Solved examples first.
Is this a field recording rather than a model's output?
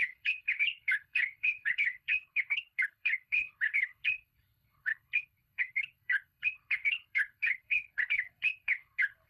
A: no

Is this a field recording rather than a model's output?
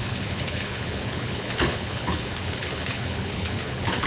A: no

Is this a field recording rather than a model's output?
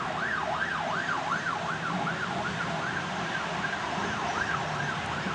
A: yes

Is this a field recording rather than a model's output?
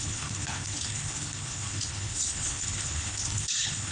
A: no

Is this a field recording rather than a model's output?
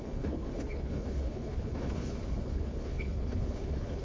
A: no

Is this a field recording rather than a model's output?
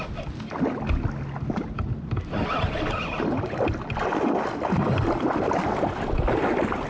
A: yes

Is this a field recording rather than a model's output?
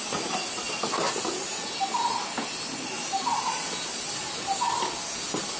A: yes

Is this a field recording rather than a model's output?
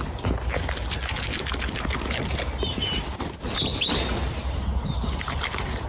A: yes